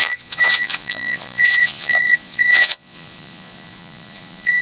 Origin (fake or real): fake